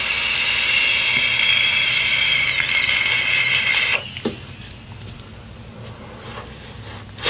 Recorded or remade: recorded